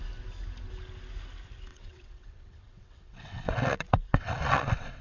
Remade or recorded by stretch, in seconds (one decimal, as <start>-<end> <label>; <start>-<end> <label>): 0.0-1.7 recorded; 1.7-5.0 remade

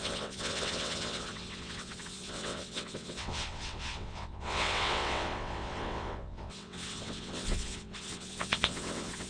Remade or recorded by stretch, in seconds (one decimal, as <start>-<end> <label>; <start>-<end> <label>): 0.0-9.3 remade

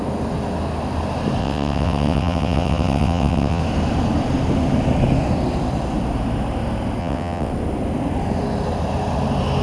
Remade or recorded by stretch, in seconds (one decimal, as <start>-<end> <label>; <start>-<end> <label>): 0.0-1.4 recorded; 1.4-3.6 remade; 3.6-7.0 recorded; 7.0-7.5 remade; 7.5-9.6 recorded

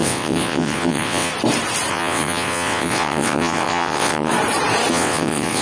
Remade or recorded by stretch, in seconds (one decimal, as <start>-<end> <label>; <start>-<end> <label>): 0.0-1.3 remade; 1.3-1.9 recorded; 1.9-4.3 remade; 4.3-4.9 recorded; 4.9-5.6 remade

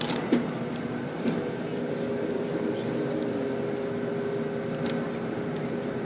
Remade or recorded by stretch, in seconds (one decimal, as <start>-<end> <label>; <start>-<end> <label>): 0.0-6.0 recorded

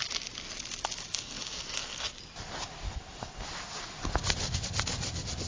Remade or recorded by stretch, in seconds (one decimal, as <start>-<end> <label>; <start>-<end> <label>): 0.0-5.5 recorded

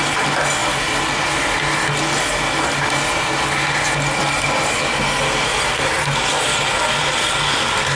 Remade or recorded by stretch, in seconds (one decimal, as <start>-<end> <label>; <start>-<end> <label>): 0.0-7.9 recorded